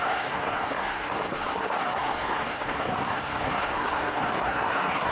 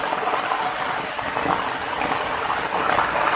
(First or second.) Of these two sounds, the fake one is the first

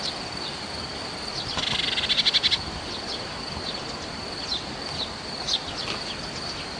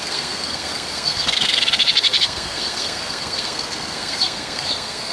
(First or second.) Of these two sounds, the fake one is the second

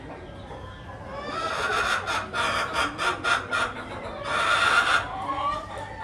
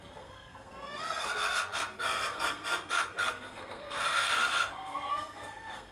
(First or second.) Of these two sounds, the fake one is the second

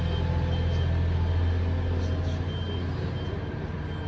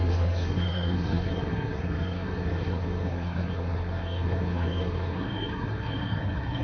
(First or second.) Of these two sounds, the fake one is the second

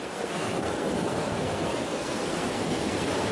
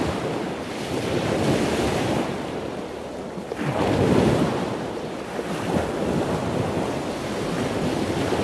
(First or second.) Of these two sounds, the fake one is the first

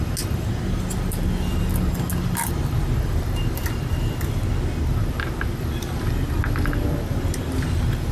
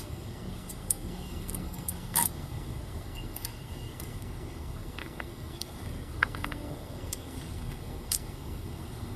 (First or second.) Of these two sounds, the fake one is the second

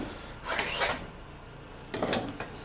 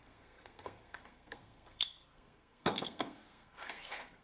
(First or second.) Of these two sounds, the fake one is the second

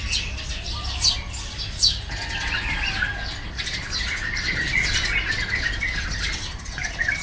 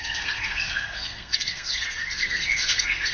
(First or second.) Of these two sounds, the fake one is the second